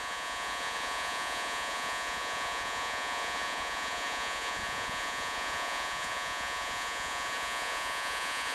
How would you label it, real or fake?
fake